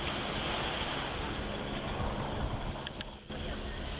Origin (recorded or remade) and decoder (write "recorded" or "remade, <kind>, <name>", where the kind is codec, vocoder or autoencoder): recorded